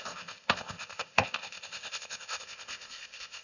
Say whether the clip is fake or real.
fake